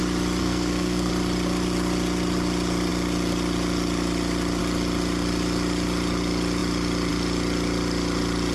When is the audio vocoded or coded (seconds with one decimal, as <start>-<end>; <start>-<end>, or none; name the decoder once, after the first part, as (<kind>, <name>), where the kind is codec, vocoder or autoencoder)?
0.4-1.1 (codec, SNAC)